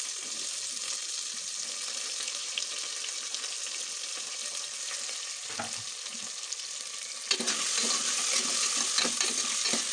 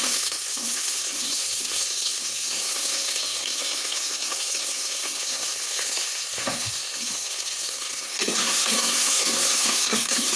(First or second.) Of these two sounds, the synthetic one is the second